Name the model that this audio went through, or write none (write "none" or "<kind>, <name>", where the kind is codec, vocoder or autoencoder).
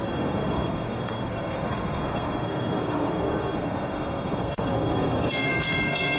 codec, SNAC